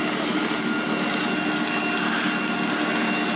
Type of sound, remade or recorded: recorded